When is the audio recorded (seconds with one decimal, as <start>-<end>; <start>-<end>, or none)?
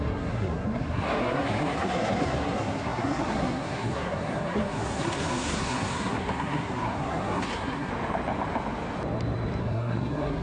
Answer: 7.9-9.6